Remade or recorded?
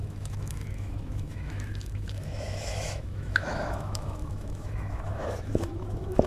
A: remade